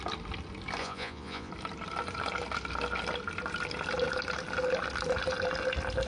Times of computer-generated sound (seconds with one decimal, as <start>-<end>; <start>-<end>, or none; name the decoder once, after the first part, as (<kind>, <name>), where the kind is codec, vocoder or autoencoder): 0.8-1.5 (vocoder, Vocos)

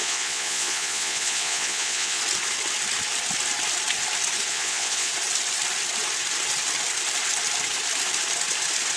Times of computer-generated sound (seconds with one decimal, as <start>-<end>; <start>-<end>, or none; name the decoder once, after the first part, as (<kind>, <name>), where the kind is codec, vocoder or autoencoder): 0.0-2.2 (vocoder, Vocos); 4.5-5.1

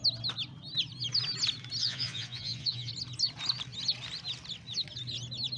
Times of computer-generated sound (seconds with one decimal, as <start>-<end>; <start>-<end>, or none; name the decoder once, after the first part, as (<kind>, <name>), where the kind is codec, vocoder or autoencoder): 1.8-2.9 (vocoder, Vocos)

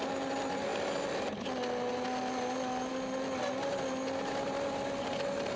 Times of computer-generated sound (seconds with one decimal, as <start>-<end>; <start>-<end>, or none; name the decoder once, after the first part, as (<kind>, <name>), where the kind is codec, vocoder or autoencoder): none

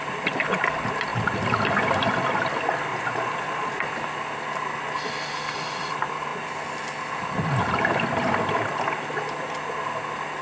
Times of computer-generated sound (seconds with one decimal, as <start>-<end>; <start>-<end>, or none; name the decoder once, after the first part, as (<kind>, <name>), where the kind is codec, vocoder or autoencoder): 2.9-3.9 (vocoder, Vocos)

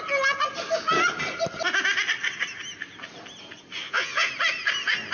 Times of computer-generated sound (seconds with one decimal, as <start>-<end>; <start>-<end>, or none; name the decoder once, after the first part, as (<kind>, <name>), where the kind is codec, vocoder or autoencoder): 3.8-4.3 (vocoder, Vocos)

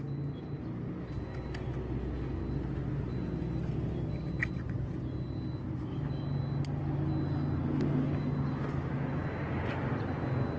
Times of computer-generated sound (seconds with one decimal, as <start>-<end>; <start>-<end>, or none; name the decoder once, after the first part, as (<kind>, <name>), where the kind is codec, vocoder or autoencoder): none

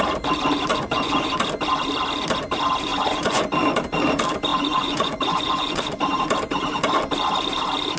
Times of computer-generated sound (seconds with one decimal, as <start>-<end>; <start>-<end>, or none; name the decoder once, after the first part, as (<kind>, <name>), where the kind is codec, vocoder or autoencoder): 0.7-1.3 (vocoder, Vocos); 2.9-3.4; 4.5-5.8